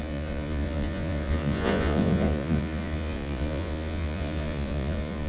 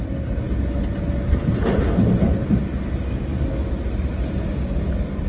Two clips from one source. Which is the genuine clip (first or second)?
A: second